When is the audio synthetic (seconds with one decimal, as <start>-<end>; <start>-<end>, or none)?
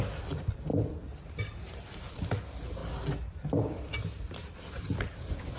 none